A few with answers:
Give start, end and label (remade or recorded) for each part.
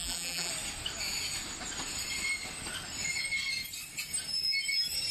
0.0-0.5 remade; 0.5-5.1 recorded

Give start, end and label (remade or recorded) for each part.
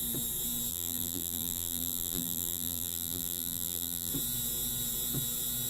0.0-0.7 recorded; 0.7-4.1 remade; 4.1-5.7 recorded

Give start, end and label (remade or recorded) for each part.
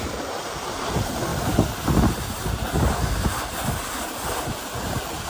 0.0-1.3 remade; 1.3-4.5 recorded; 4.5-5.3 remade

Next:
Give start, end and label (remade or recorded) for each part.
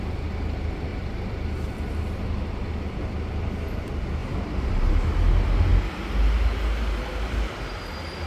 0.0-0.9 recorded; 0.9-2.7 remade; 2.7-4.2 recorded; 4.2-4.9 remade; 4.9-8.3 recorded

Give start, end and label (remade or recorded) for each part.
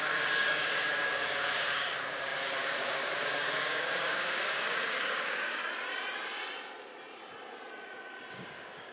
0.0-5.6 remade; 5.6-8.3 recorded; 8.3-8.9 remade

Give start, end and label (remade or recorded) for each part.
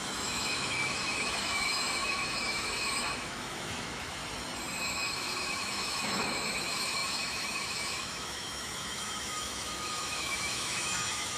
0.0-4.2 remade; 4.2-4.8 recorded; 4.8-11.4 remade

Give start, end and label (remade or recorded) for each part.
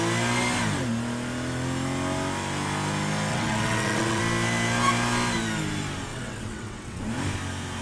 0.0-3.3 recorded; 3.3-4.2 remade; 4.2-6.1 recorded; 6.1-7.0 remade; 7.0-7.8 recorded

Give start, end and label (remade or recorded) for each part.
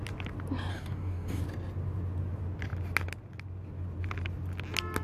0.0-0.7 recorded; 0.7-1.4 remade; 1.4-5.0 recorded